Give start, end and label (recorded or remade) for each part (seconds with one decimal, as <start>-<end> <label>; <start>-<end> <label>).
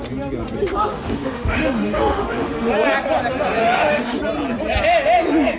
0.0-0.9 recorded; 0.9-2.7 remade; 2.7-3.6 recorded; 3.6-4.2 remade; 4.2-5.6 recorded